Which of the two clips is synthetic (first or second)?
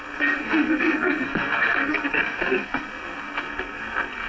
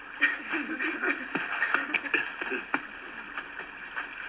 first